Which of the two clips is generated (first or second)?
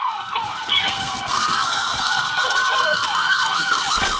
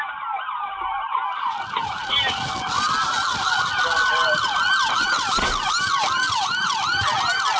first